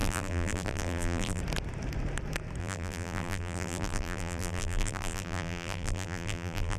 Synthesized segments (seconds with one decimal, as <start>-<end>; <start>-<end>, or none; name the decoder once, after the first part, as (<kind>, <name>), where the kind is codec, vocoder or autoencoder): 0.0-1.4 (vocoder, BigVGAN v2); 2.6-6.8